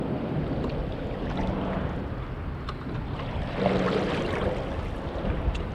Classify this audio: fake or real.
real